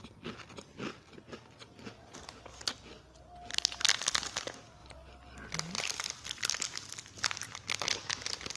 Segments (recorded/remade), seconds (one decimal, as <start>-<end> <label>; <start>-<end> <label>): 0.0-8.6 recorded